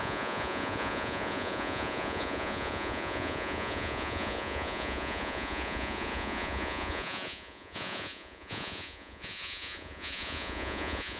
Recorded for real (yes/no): no